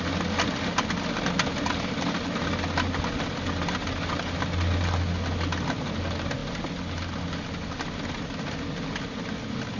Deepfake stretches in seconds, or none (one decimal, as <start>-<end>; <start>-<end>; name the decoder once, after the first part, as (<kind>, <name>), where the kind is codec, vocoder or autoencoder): none